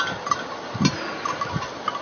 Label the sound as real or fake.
real